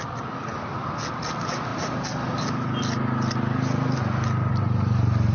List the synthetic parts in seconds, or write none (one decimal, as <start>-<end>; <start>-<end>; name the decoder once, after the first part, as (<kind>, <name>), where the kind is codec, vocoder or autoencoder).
none